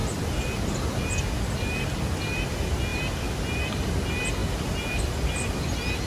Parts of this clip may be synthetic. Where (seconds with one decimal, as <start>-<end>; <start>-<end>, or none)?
none